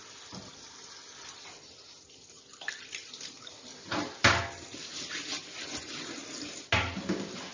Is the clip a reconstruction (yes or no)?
no